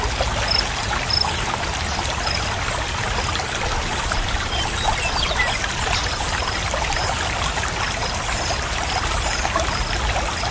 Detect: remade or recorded recorded